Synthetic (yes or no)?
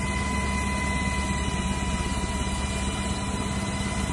no